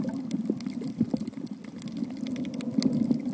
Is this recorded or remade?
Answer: recorded